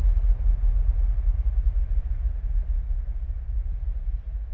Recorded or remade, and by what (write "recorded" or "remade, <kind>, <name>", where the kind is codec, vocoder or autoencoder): recorded